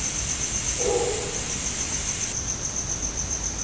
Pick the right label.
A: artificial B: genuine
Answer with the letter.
B